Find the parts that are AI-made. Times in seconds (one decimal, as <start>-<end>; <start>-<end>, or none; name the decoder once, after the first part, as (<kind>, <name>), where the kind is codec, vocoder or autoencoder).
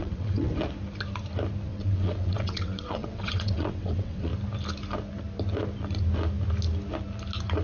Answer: 0.0-0.5 (vocoder, WaveNeXt); 1.7-4.3